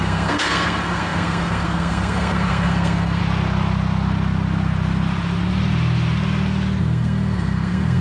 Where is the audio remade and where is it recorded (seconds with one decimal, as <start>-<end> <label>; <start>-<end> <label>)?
0.0-3.2 remade; 3.2-6.8 recorded; 6.8-8.0 remade